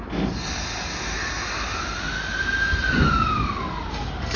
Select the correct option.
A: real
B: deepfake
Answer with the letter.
A